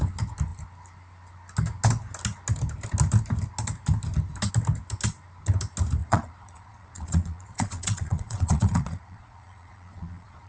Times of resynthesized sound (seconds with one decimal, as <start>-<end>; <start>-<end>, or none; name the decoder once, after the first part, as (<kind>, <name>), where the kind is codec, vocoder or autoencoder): 6.0-10.5 (vocoder, Vocos)